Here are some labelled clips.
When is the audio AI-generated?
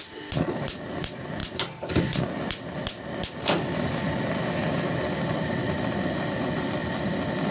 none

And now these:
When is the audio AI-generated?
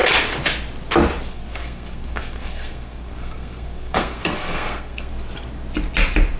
1.3-5.1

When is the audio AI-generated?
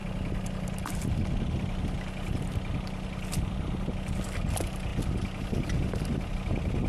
none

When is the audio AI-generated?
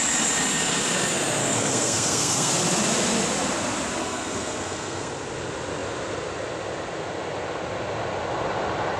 1.4-2.5; 4.0-5.1